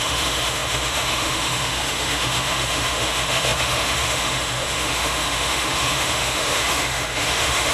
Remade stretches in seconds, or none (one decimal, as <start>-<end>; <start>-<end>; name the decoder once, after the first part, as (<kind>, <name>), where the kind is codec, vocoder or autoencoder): 0.0-7.7 (autoencoder, DAC-VAE)